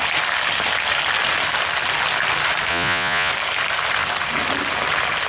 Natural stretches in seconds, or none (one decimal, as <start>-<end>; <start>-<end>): 0.0-2.7; 3.3-5.3